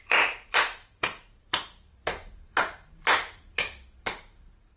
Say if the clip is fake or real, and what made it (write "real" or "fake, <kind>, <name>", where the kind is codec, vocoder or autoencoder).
fake, vocoder, BigVGAN v2